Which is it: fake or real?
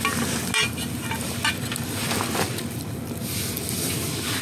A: real